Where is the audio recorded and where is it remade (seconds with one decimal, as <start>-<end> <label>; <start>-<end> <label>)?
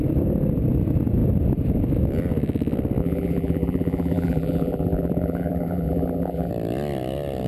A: 0.0-3.0 recorded; 3.0-6.5 remade; 6.5-7.5 recorded